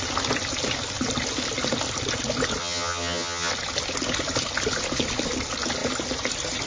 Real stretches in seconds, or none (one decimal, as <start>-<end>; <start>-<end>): 0.0-2.6; 3.5-6.7